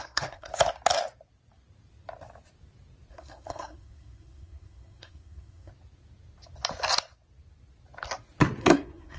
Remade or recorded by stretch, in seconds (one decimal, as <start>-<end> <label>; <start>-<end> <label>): 0.0-0.5 remade; 0.5-3.1 recorded; 3.1-5.7 remade; 5.7-8.6 recorded; 8.6-9.2 remade